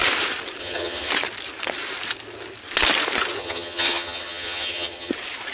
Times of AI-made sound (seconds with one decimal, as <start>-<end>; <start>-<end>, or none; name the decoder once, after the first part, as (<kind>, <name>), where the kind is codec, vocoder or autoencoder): 0.6-1.1 (vocoder, HiFi-GAN); 3.4-5.1